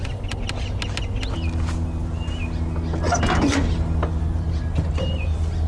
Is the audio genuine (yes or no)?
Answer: yes